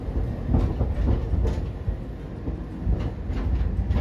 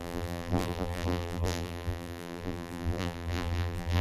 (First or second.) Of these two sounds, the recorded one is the first